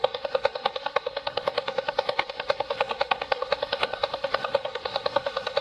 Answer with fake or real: fake